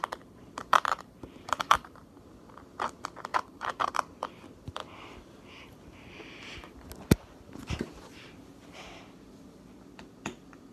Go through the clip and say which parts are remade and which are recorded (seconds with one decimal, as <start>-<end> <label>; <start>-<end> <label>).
0.0-0.6 recorded; 0.6-2.0 remade; 2.0-3.3 recorded; 3.3-3.9 remade; 3.9-10.7 recorded